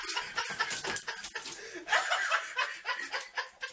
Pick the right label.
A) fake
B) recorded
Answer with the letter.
B